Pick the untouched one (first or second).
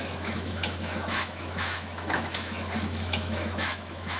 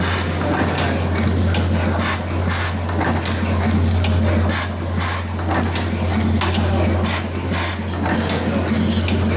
second